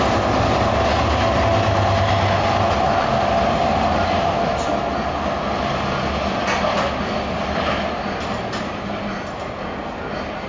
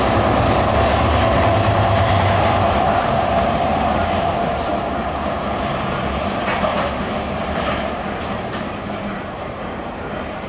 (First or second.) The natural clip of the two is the first